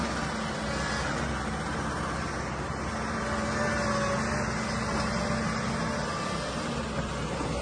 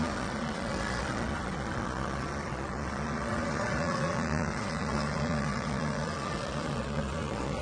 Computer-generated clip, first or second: second